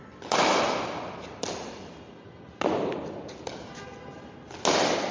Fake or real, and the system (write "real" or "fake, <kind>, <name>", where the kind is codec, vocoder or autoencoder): real